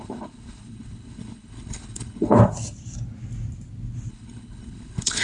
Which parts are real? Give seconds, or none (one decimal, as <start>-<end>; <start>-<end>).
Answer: 2.4-4.1